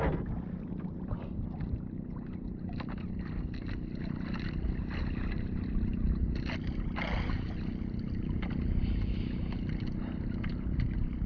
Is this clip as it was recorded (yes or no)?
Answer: yes